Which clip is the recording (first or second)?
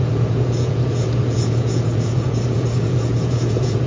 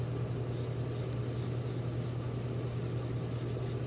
second